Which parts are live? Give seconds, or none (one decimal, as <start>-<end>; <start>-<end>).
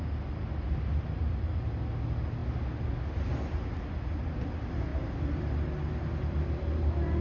0.0-7.2